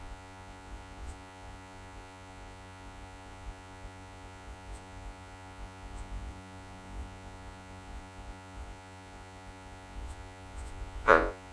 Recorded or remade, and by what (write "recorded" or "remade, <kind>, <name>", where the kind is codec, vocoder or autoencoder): remade, vocoder, Vocos